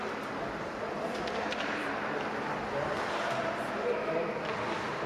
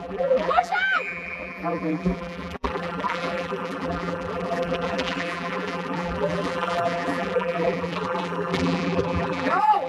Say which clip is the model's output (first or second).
second